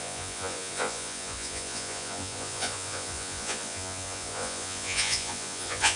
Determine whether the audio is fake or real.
fake